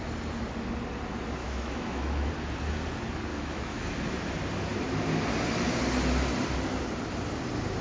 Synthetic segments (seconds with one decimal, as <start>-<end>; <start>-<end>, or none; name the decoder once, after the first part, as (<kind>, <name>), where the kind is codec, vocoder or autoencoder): 1.4-2.3 (autoencoder, DAC-VAE); 3.3-3.9